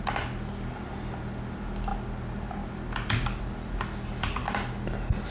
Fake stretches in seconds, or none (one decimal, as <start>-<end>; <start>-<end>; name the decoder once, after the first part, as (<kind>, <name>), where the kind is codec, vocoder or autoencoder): none